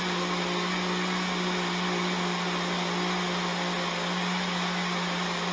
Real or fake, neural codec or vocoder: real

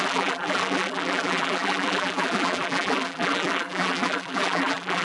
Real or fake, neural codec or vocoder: fake, vocoder, BigVGAN v2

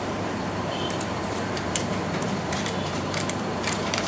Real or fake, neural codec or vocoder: fake, vocoder, BigVGAN v2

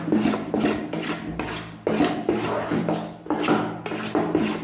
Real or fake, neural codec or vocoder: real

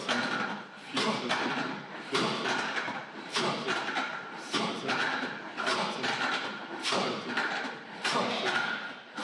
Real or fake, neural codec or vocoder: fake, vocoder, BigVGAN v2